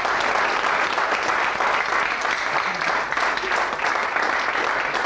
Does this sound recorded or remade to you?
recorded